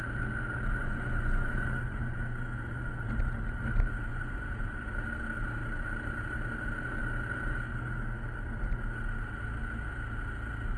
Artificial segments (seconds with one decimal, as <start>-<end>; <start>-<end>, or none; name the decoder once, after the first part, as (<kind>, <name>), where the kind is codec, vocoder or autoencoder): 0.8-3.0 (vocoder, Vocos); 4.1-4.6